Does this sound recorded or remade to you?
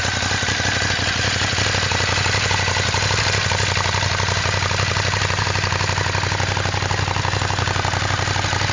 recorded